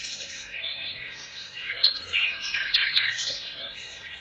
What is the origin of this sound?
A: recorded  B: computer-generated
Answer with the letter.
B